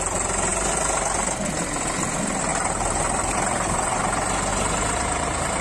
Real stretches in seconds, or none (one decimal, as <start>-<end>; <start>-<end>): 0.0-2.5; 4.0-4.5